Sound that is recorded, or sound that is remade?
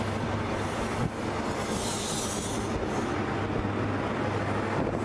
recorded